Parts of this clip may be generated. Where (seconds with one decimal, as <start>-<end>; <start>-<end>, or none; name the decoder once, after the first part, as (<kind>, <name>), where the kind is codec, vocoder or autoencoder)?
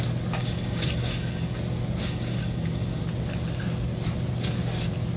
0.4-1.6 (codec, DAC); 2.0-3.0